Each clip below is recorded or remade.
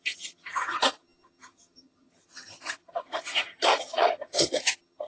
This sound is remade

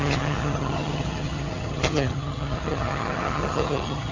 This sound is remade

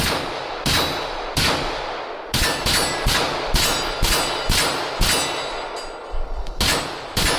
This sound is recorded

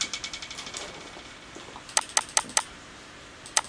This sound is recorded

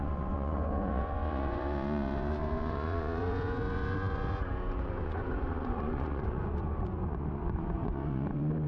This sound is remade